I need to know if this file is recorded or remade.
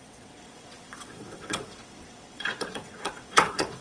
remade